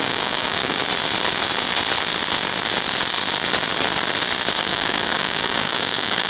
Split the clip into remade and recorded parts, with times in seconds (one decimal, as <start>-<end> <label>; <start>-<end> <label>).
0.0-0.8 remade; 0.8-4.6 recorded; 4.6-6.3 remade